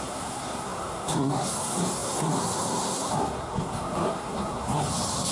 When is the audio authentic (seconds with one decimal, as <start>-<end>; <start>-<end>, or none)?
none